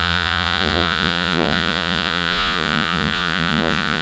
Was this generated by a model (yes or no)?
yes